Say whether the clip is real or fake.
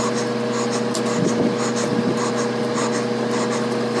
real